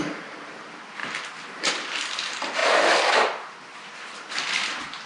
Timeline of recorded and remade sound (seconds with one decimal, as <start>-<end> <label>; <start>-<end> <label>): 0.0-1.0 remade; 1.0-1.7 recorded; 1.7-5.1 remade